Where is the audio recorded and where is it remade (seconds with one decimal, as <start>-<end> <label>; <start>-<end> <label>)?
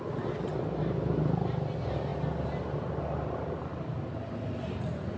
0.0-5.2 recorded